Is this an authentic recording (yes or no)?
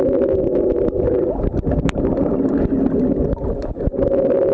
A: yes